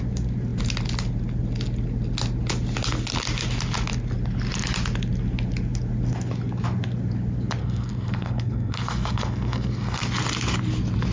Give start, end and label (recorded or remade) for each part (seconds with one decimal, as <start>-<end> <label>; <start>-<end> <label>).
0.0-7.6 recorded; 7.6-10.0 remade; 10.0-11.1 recorded